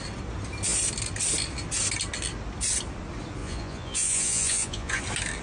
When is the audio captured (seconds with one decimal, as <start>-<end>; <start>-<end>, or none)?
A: 0.0-3.4; 5.0-5.4